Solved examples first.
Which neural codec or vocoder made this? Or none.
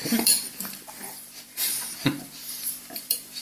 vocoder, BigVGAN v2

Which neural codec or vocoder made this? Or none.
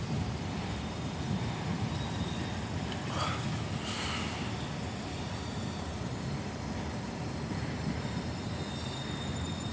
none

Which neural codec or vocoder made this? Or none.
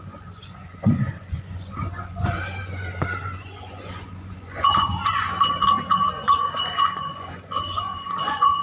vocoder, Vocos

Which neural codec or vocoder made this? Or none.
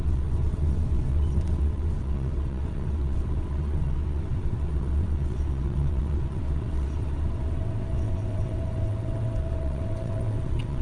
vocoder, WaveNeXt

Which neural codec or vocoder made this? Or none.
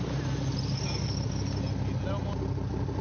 none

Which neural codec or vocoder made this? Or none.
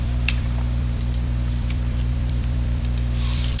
vocoder, BigVGAN v2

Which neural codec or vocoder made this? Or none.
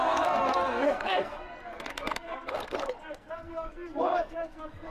codec, SNAC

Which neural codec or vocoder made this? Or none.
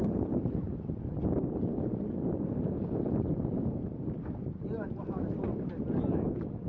none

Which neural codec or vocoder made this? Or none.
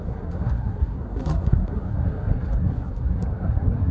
codec, SNAC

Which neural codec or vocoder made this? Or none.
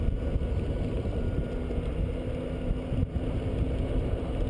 none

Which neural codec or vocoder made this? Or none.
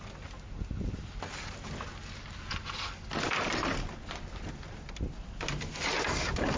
none